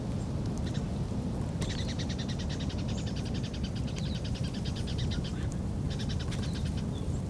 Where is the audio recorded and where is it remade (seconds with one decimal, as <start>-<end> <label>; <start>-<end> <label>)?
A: 0.0-7.3 recorded